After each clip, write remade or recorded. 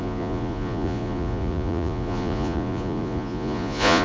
remade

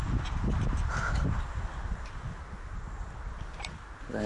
recorded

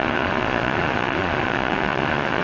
remade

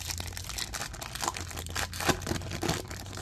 recorded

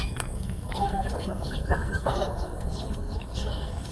remade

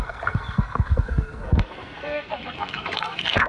remade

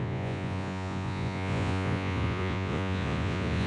remade